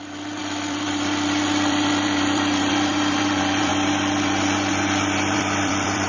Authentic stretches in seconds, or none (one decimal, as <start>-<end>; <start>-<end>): 3.7-4.7